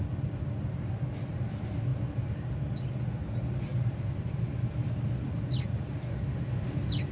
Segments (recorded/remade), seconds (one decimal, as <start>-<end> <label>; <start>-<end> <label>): 0.0-7.1 recorded